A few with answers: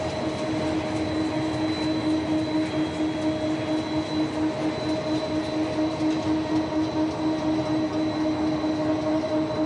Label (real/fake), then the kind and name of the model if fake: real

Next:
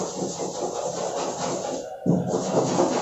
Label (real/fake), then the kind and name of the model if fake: real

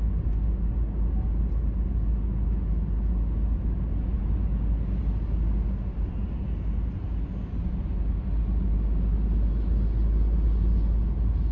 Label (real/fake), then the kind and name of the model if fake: real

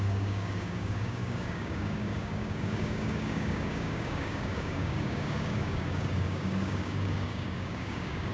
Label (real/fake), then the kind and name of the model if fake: fake, codec, DAC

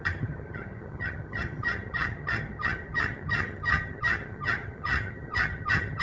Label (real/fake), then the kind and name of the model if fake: fake, vocoder, HiFi-GAN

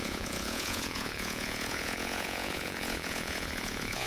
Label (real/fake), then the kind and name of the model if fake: fake, vocoder, Vocos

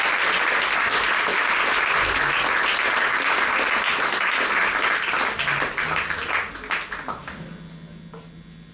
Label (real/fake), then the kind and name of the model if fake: real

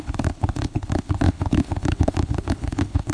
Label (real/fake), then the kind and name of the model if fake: fake, codec, HILCodec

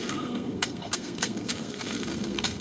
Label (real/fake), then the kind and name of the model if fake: fake, codec, SNAC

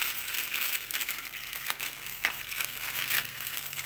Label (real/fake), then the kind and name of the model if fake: fake, codec, SNAC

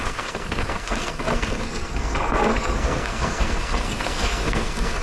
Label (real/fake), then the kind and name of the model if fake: fake, codec, SNAC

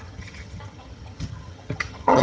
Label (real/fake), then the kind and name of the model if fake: fake, vocoder, HiFi-GAN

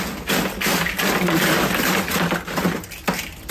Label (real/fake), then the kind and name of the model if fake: real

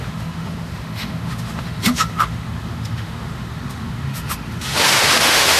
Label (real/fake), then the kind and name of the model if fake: fake, autoencoder, DAC-VAE